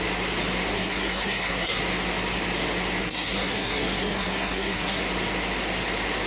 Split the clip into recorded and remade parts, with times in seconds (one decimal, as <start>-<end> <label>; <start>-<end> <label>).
0.0-0.7 recorded; 0.7-1.8 remade; 1.8-3.0 recorded; 3.0-5.0 remade; 5.0-6.3 recorded